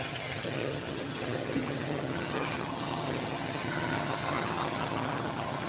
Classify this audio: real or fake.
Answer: fake